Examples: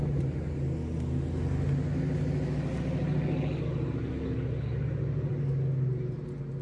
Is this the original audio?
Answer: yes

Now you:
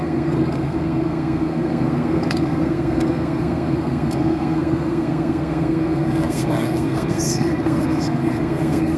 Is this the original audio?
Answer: no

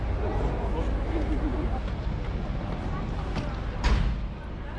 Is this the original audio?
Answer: yes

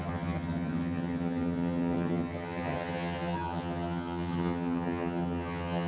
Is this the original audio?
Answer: no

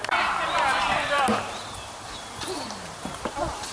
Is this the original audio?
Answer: no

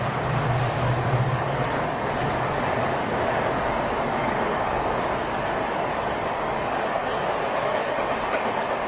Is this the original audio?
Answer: no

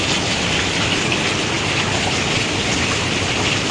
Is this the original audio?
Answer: yes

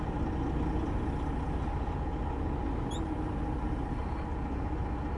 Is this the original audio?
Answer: yes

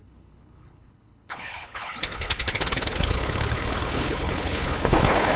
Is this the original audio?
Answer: no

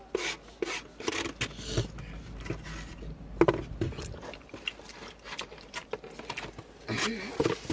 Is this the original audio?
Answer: yes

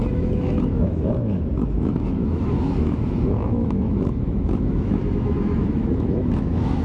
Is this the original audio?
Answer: no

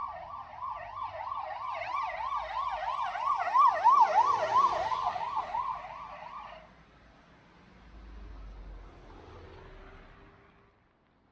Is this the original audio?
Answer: yes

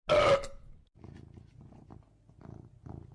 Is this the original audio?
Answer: yes